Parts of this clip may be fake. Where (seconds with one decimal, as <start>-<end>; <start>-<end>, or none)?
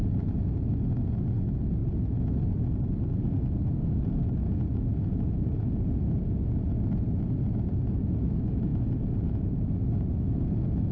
none